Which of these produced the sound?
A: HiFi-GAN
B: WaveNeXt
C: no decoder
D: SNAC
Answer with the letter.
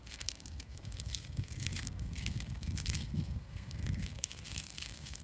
D